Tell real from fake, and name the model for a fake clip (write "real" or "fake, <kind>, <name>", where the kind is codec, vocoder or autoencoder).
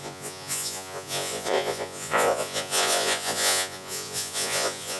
fake, vocoder, Vocos